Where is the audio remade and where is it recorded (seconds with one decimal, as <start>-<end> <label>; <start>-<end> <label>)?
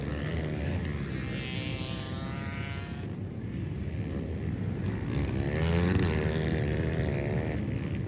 0.0-1.7 recorded; 1.7-3.9 remade; 3.9-8.1 recorded